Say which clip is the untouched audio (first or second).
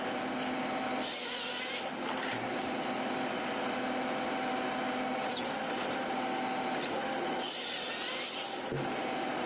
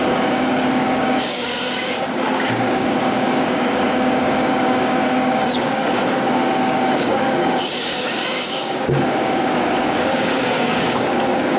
first